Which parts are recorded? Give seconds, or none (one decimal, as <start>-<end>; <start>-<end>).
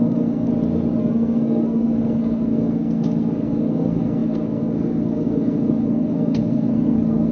0.5-1.0